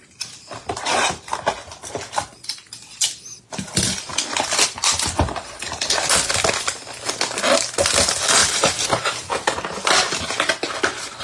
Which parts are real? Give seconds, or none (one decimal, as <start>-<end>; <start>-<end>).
0.0-8.4; 9.6-11.2